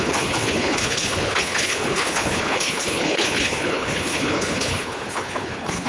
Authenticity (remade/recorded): remade